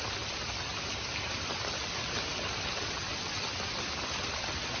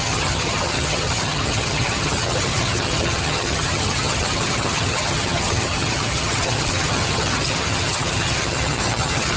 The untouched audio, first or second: first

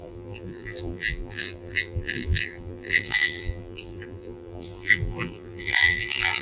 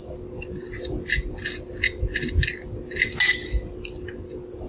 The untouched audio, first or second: second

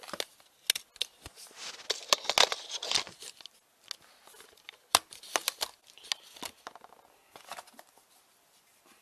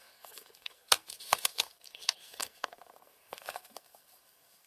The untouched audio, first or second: first